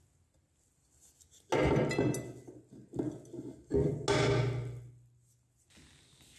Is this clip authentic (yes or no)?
yes